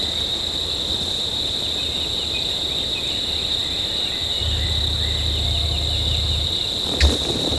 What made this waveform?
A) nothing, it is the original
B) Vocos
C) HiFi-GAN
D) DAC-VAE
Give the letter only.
A